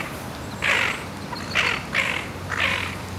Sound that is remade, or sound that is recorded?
recorded